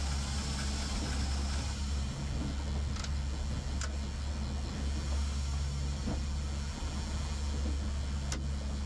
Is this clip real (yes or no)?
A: yes